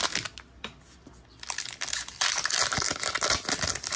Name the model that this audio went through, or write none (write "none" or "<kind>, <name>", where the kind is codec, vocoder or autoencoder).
none